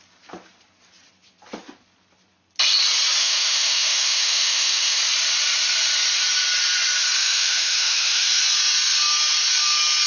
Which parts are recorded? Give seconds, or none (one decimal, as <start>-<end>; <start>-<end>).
0.0-3.2; 5.0-7.2; 8.4-10.1